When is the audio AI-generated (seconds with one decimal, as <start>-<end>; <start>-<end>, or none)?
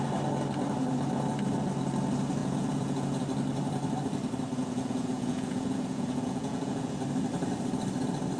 2.4-3.2; 4.6-6.9